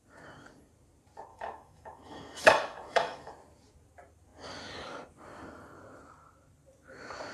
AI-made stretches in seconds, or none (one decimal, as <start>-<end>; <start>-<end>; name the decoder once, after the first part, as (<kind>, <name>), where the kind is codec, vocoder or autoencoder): 1.3-3.3 (autoencoder, DAC-VAE)